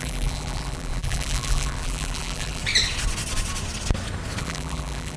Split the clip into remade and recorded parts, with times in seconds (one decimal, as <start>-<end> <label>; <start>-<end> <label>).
0.0-2.6 remade; 2.6-4.4 recorded; 4.4-5.2 remade